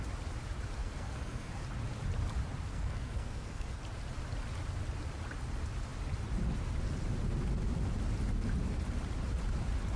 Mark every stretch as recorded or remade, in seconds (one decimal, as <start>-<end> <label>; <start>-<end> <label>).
0.0-0.8 recorded; 0.8-1.5 remade; 1.5-2.7 recorded; 2.7-3.8 remade; 3.8-10.0 recorded